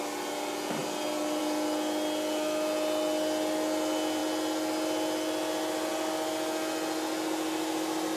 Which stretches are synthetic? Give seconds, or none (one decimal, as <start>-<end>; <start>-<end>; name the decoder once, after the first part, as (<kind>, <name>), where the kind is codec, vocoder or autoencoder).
none